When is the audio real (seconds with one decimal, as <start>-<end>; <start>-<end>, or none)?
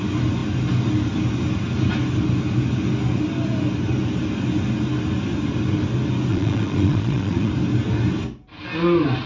0.0-6.3; 7.5-9.3